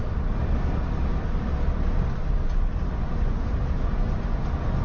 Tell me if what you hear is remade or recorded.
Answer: recorded